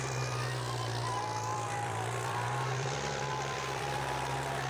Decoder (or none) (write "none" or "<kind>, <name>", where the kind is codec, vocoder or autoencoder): vocoder, BigVGAN v2